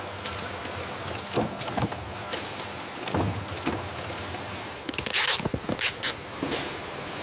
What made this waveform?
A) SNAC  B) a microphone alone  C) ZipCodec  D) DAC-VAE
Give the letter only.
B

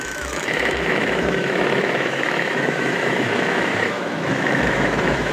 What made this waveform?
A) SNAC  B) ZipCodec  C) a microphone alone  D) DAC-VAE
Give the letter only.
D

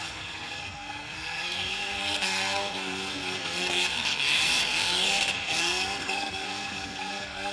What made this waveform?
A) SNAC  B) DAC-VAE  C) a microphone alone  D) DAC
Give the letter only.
A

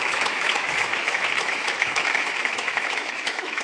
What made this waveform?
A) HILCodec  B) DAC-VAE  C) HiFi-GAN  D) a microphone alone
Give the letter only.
B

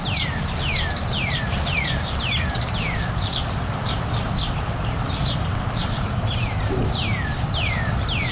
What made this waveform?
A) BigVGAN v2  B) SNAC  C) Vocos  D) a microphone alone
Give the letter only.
A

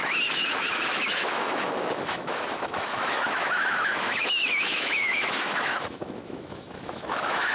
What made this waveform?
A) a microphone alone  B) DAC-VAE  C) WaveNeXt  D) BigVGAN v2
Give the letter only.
B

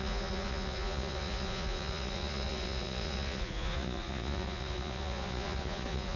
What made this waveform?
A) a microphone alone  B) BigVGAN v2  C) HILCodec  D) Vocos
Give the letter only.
D